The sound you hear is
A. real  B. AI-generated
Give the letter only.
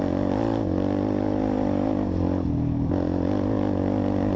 A